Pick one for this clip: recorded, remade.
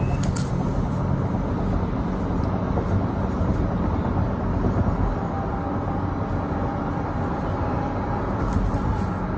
recorded